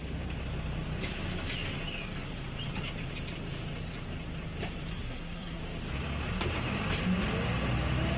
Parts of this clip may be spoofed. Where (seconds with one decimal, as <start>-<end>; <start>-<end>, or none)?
4.9-5.6